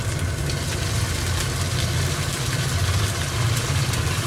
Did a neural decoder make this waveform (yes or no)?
no